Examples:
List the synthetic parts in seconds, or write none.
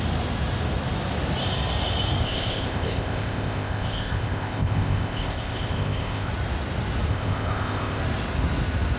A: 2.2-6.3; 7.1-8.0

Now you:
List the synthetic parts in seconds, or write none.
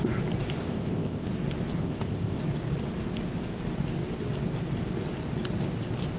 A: 0.6-1.3; 1.8-2.4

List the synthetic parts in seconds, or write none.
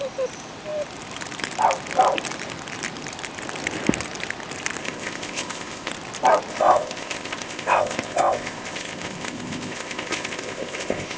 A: 4.8-5.9; 6.5-11.2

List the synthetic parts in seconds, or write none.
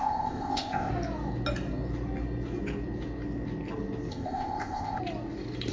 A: 0.0-0.9; 4.1-5.0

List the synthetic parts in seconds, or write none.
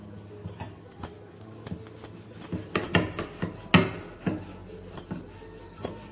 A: none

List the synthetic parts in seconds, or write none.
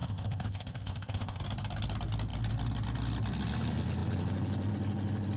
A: 0.0-1.4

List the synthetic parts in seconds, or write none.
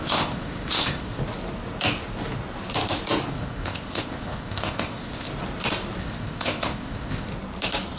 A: 0.0-1.2; 3.3-5.3; 6.0-7.3